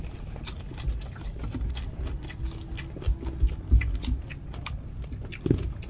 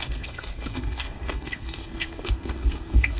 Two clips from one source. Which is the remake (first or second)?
second